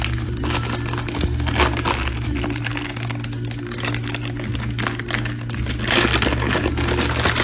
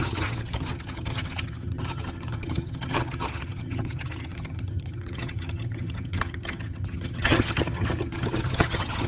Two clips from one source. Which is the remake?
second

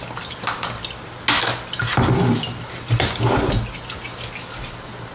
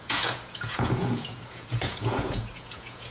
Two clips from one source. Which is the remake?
second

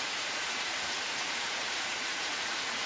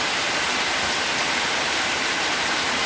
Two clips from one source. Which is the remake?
first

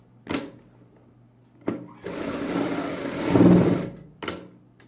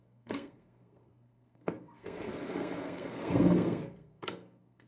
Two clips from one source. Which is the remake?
second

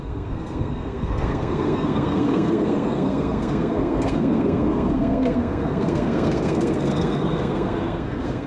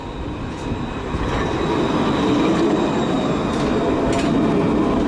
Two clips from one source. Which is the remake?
first